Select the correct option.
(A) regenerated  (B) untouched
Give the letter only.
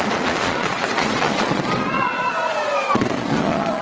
A